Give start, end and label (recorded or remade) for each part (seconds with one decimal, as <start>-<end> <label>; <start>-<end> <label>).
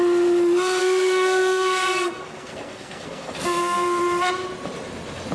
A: 0.0-0.8 recorded; 0.8-4.0 remade; 4.0-5.3 recorded